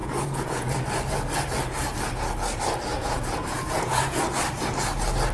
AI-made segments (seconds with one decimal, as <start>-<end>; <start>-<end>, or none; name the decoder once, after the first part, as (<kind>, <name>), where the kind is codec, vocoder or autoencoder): 0.0-0.7 (vocoder, Vocos); 2.9-4.2